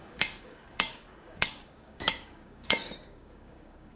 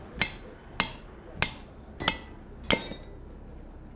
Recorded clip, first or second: second